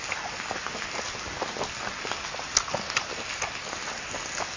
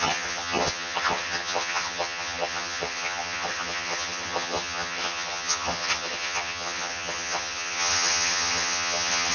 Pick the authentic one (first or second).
first